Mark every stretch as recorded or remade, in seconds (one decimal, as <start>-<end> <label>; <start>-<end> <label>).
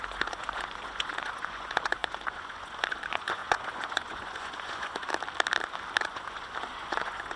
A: 0.0-5.1 remade; 5.1-6.0 recorded; 6.0-7.4 remade